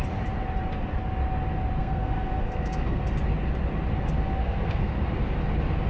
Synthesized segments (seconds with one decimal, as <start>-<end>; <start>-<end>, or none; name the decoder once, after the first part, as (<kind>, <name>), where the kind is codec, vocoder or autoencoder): 1.8-3.0 (codec, SNAC); 4.4-4.9